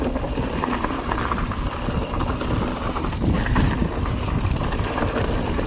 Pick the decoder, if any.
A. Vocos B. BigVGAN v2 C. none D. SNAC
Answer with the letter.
C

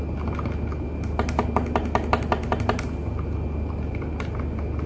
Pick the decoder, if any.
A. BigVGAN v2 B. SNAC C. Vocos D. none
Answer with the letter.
D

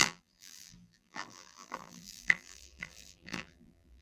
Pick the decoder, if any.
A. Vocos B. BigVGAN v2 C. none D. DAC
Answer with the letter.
B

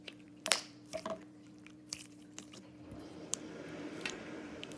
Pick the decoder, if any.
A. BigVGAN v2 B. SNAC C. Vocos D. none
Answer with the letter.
A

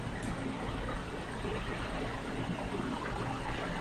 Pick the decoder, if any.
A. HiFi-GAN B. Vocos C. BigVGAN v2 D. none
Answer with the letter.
D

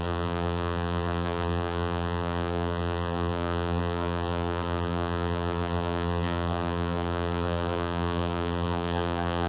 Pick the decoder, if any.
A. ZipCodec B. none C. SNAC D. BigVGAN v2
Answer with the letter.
D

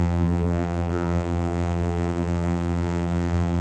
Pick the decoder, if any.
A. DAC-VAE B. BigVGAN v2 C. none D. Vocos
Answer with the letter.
B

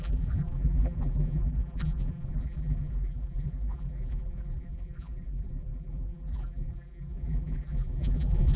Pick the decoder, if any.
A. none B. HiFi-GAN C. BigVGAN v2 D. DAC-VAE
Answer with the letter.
C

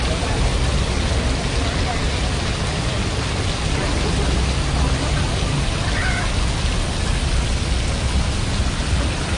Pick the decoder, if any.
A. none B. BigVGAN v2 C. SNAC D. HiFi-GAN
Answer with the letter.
A